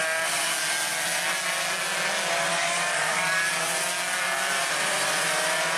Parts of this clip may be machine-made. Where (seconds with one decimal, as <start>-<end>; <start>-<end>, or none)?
2.5-3.5